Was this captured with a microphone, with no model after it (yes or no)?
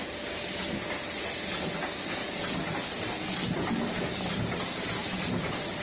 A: yes